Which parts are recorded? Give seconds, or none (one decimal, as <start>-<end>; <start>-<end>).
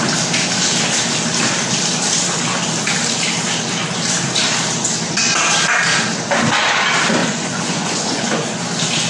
0.0-7.2; 8.6-9.1